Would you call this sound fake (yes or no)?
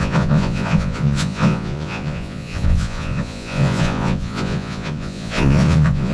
yes